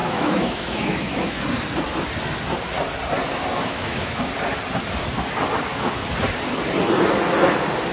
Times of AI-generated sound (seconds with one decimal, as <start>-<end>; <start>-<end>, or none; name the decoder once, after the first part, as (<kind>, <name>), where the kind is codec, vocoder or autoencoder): 0.0-1.4 (autoencoder, DAC-VAE); 3.5-4.3